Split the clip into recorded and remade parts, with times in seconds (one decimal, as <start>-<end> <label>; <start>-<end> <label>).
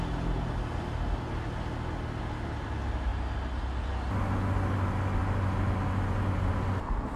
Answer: 0.0-7.2 recorded